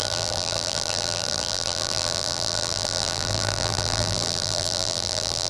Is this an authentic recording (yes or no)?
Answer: no